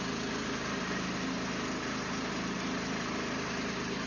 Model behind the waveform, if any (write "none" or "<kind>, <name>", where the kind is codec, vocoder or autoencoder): none